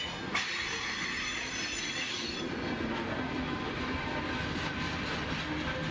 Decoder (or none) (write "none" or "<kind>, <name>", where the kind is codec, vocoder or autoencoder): none